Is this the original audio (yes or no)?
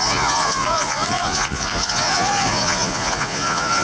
no